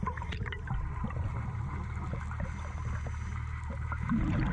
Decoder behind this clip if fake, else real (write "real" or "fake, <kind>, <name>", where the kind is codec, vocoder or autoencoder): real